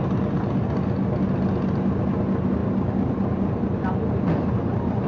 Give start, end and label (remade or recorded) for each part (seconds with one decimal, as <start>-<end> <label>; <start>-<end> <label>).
0.0-5.1 recorded